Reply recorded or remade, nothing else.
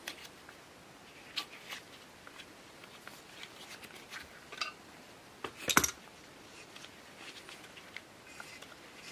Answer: recorded